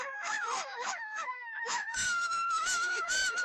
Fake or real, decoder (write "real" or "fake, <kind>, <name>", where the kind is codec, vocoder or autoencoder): fake, autoencoder, DAC-VAE